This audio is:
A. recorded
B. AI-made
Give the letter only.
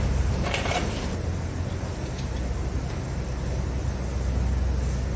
A